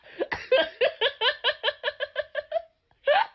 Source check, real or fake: real